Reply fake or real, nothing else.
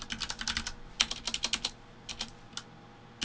real